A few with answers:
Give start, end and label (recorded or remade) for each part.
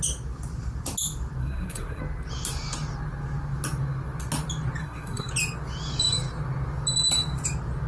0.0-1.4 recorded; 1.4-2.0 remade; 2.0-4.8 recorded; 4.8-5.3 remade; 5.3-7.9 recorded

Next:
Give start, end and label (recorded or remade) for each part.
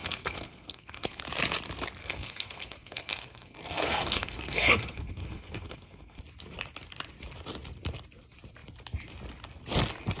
0.0-1.2 remade; 1.2-2.0 recorded; 2.0-6.2 remade; 6.2-10.2 recorded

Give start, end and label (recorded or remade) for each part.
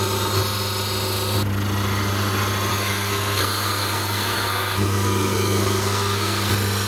0.0-2.7 recorded; 2.7-6.5 remade; 6.5-6.9 recorded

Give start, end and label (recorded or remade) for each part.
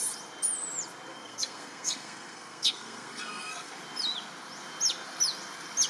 0.0-1.1 recorded; 1.1-3.7 remade; 3.7-5.9 recorded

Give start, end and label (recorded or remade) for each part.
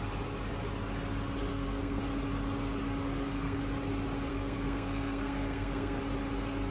0.0-1.5 recorded; 1.5-2.0 remade; 2.0-3.0 recorded; 3.0-3.6 remade; 3.6-4.3 recorded; 4.3-6.0 remade; 6.0-6.7 recorded